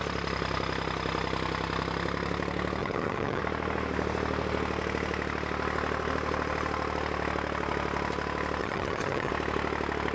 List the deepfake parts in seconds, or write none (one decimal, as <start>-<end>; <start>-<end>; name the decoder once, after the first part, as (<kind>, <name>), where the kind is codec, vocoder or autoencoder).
2.8-3.4 (vocoder, HiFi-GAN); 8.6-9.3